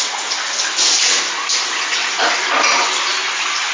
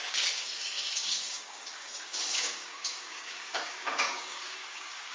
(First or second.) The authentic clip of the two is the first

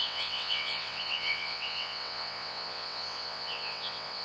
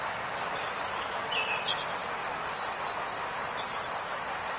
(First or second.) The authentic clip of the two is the second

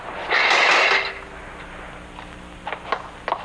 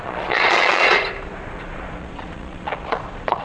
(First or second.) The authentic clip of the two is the first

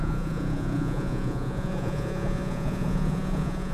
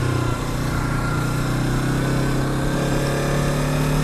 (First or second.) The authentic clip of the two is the second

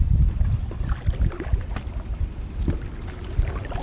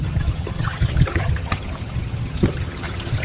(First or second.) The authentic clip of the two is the first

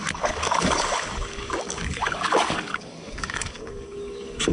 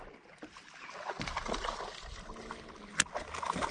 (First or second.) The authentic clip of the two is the second